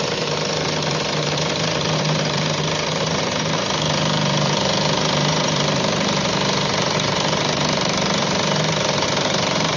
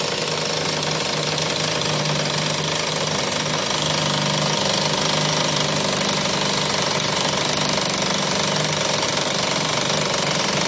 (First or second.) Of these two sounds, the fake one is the first